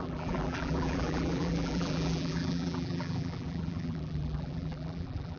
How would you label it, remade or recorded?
remade